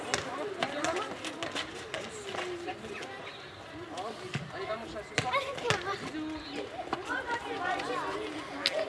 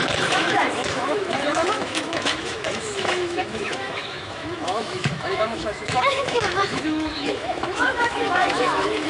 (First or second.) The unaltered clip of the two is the first